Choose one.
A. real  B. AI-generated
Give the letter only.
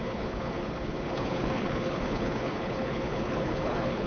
B